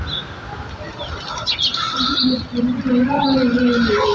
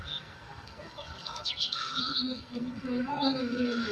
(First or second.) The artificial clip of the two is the second